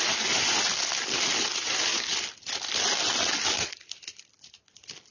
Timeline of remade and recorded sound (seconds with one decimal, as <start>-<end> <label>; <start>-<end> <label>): 0.0-1.9 recorded; 1.9-5.1 remade